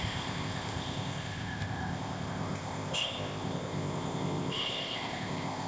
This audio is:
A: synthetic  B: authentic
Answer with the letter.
A